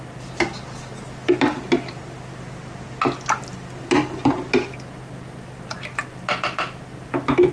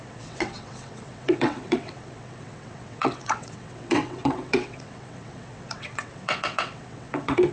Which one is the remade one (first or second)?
second